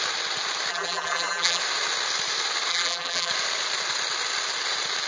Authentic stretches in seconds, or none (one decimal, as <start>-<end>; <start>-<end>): 0.0-0.7; 1.6-2.7; 3.3-5.1